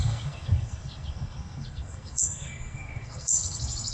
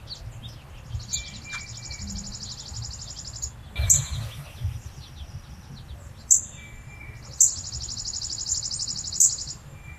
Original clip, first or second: second